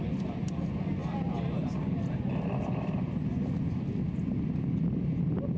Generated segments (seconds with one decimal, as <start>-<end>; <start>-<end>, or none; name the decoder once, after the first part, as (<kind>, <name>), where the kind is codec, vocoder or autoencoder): none